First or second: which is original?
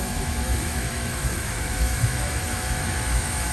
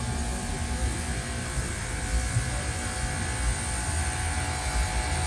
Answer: second